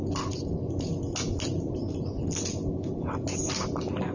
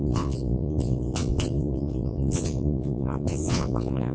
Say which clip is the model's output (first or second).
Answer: second